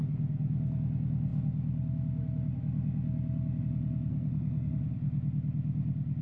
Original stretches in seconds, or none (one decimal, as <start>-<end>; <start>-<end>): 0.0-4.1; 4.7-6.2